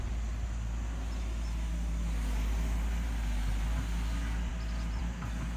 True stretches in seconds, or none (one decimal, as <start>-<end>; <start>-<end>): 0.0-5.6